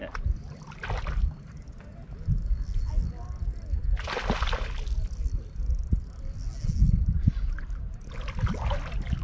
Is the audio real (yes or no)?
yes